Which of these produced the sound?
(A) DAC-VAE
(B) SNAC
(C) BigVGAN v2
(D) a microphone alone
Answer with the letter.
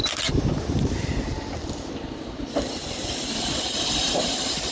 C